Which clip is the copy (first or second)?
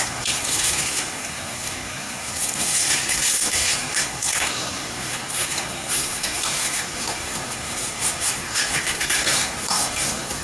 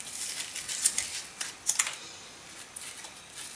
first